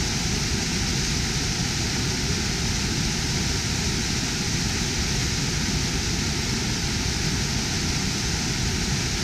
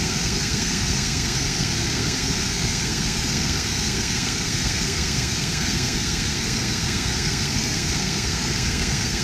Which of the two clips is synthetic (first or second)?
second